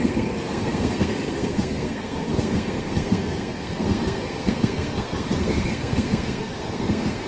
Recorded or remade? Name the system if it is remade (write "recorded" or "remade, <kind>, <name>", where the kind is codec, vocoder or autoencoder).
remade, codec, SNAC